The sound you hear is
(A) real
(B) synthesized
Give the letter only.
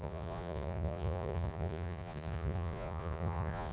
B